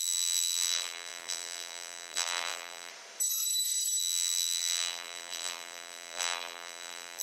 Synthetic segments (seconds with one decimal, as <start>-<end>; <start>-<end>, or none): 0.0-2.9; 4.0-7.2